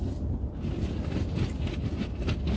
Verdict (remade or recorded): recorded